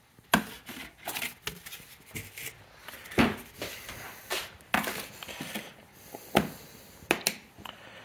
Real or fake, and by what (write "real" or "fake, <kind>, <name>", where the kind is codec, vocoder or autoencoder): real